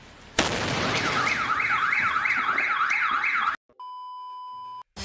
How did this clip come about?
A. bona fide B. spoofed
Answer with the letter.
A